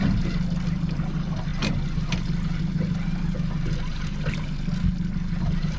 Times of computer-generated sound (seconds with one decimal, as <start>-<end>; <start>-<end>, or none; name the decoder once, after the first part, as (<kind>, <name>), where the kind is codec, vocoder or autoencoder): none